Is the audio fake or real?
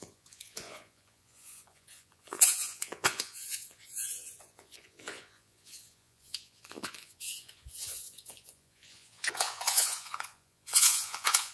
fake